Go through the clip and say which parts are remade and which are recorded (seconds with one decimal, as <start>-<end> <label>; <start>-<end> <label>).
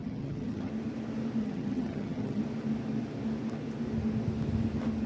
0.0-0.7 remade; 0.7-1.4 recorded; 1.4-2.4 remade; 2.4-5.1 recorded